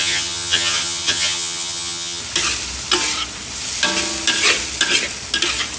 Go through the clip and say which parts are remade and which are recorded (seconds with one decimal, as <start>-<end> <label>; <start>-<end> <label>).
0.0-2.2 remade; 2.2-5.8 recorded